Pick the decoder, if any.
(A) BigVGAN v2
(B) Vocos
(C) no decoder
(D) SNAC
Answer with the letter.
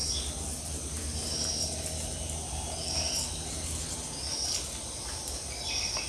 C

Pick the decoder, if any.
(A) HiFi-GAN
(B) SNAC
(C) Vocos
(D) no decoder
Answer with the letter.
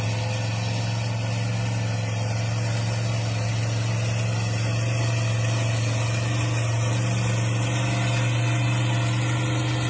D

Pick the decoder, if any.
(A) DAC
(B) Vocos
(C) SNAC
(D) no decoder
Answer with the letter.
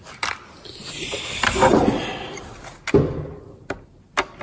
D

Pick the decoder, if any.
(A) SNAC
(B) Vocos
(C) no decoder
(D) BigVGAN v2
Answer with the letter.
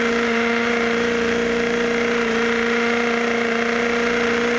C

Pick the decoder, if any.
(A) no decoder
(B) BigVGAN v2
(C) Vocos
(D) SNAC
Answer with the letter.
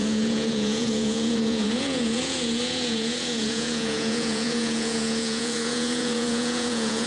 C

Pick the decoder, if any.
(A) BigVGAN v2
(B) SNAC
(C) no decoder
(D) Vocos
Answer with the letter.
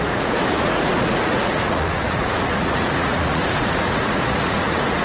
D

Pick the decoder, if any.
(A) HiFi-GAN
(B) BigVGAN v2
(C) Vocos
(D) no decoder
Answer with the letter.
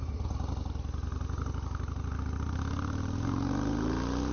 D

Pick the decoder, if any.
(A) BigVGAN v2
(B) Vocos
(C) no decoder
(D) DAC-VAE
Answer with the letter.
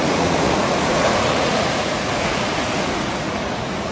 B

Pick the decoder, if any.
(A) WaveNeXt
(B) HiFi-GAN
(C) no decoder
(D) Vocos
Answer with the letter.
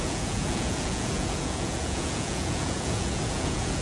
D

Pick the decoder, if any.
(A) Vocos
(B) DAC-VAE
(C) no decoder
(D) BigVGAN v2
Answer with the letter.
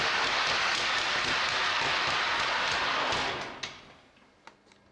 C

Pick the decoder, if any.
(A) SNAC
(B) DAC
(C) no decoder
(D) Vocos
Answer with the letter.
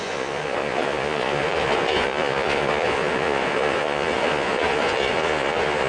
D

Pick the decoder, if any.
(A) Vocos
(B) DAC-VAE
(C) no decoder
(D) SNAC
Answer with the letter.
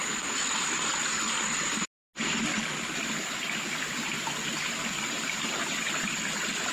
C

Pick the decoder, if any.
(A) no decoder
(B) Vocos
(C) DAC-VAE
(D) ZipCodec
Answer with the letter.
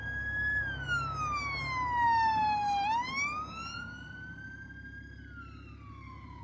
A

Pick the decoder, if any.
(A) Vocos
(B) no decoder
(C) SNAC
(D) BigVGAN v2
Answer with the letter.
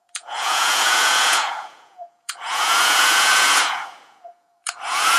A